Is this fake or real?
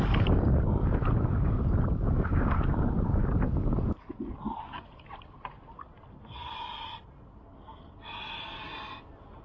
real